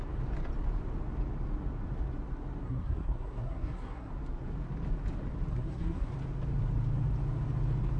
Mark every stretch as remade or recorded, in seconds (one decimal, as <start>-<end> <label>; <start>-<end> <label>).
0.0-2.6 recorded; 2.6-4.1 remade; 4.1-5.5 recorded; 5.5-6.1 remade; 6.1-8.0 recorded